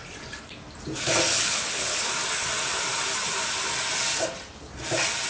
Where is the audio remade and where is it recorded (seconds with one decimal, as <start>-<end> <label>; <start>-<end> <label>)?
0.0-1.3 recorded; 1.3-2.1 remade; 2.1-5.3 recorded